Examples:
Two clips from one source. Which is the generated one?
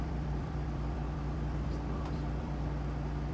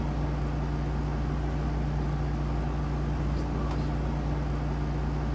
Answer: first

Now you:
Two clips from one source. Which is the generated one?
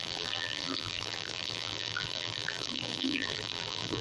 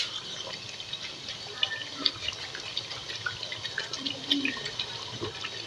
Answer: first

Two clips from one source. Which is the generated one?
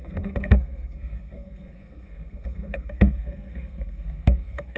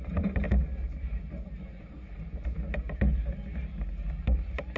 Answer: first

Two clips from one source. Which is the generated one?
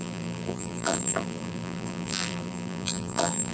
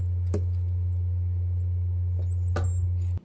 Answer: first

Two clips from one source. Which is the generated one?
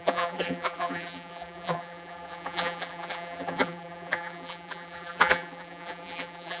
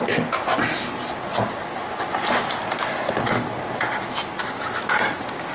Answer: first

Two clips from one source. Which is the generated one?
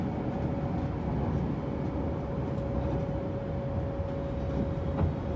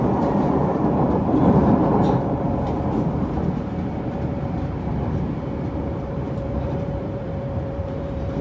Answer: second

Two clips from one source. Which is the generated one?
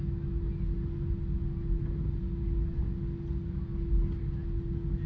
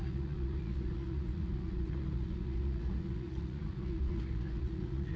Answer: second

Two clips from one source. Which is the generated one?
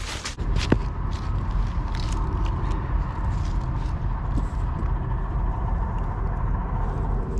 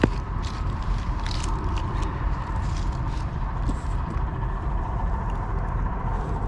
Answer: second